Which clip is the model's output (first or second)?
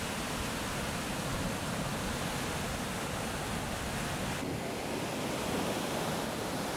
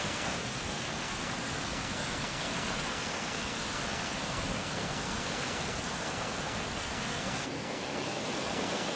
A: second